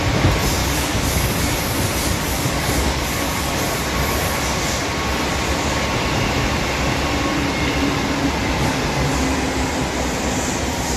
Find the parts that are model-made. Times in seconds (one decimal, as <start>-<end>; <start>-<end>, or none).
0.6-1.5; 2.3-3.6